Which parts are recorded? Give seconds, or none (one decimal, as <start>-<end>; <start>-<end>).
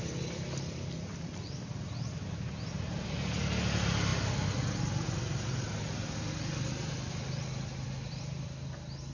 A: 0.0-9.1